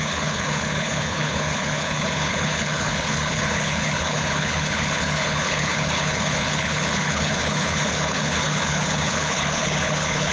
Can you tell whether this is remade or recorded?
remade